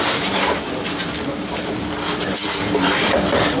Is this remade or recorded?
remade